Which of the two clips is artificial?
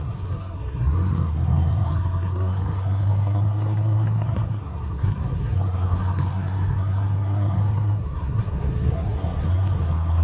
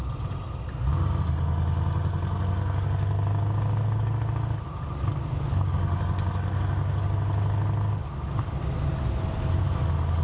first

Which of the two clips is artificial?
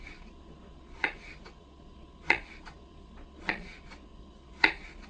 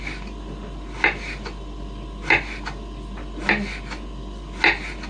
first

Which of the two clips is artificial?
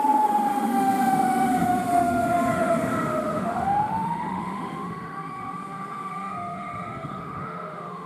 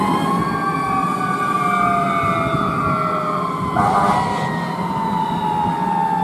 first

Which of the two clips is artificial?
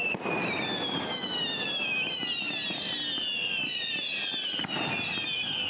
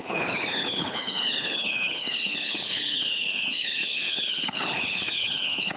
second